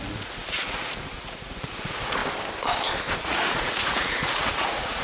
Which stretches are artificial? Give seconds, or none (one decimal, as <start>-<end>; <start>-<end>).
0.0-2.2; 3.2-5.0